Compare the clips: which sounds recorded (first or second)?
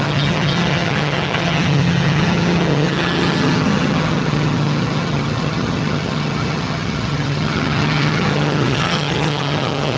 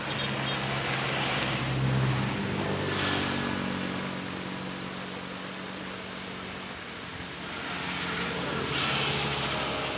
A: second